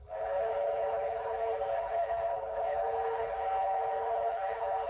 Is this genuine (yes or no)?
no